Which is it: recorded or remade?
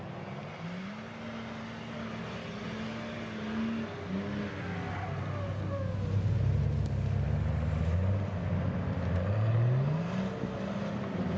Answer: recorded